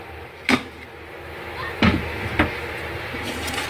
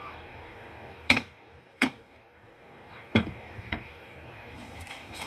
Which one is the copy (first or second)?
second